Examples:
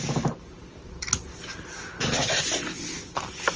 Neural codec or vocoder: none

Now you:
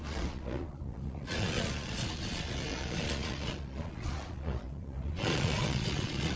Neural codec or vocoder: vocoder, Vocos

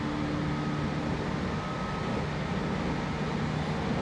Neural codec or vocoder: none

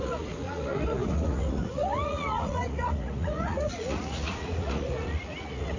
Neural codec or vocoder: vocoder, Vocos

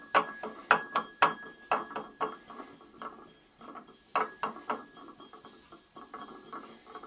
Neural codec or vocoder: none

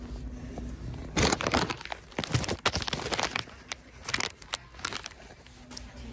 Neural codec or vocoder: none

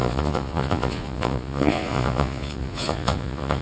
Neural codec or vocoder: vocoder, Vocos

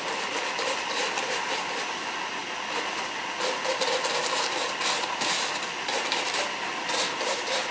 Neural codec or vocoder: none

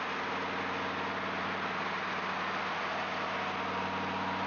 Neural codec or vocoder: none